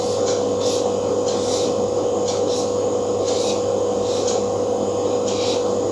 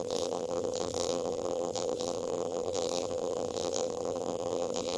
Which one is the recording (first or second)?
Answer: first